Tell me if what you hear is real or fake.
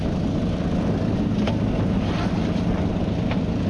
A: real